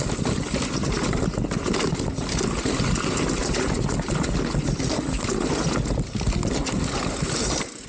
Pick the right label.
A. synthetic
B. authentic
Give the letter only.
B